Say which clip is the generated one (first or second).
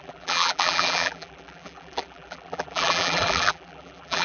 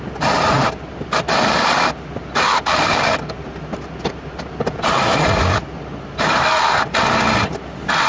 first